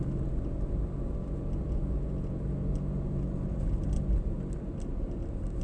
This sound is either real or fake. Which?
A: real